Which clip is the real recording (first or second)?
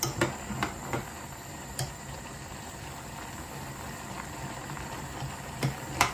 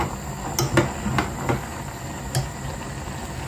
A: second